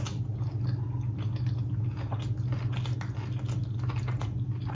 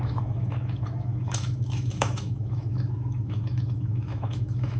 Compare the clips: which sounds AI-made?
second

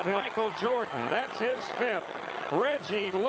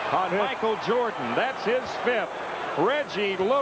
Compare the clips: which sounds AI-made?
first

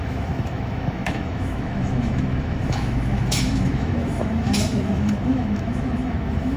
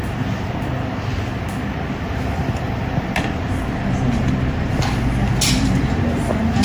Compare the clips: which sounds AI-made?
first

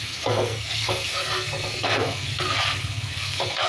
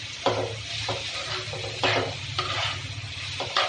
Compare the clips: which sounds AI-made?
first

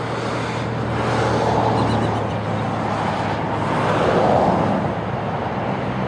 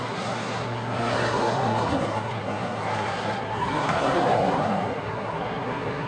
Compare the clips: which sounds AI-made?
second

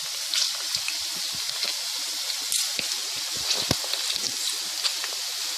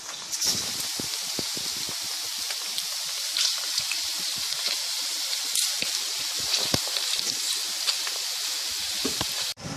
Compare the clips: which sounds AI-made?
second